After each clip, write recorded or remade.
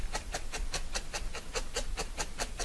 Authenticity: recorded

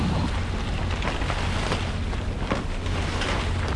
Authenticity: recorded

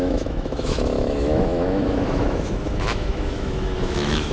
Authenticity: remade